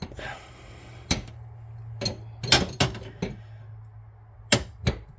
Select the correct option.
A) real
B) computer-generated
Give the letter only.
A